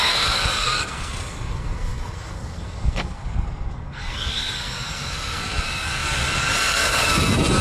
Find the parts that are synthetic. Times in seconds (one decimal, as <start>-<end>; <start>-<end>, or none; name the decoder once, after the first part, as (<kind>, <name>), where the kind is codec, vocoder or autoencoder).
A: 0.0-7.6 (codec, SNAC)